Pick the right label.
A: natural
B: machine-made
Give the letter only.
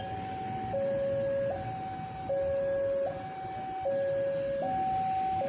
A